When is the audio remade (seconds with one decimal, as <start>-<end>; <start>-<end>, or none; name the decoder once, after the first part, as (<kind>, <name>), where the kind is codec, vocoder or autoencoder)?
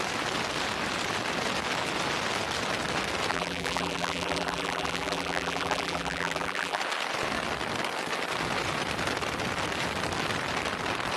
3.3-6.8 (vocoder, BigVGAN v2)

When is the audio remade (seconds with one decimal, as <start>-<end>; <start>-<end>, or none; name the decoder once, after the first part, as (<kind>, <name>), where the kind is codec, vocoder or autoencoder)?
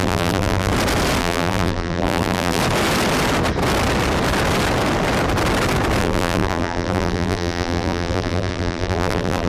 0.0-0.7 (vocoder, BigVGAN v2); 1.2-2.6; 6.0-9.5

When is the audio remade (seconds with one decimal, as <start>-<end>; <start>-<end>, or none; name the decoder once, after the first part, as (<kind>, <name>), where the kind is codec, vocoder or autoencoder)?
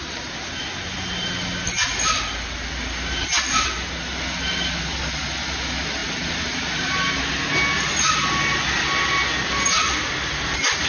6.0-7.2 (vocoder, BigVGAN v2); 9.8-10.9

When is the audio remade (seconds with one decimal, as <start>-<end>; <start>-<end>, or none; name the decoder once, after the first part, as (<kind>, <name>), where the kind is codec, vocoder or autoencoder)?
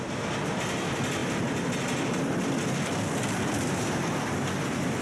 none